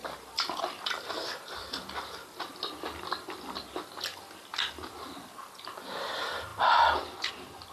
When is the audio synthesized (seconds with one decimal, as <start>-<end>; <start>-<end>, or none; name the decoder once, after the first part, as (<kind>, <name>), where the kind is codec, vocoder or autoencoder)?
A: 0.0-1.6 (vocoder, BigVGAN v2); 4.9-7.7